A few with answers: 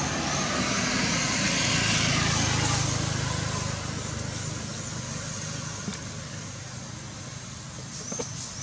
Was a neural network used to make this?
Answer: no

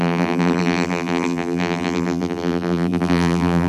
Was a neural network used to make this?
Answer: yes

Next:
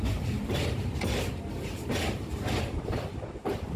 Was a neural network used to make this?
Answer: yes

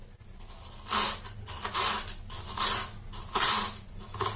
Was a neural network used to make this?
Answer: no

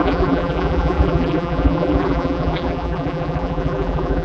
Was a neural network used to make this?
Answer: yes